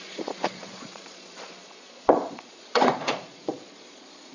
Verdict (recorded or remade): remade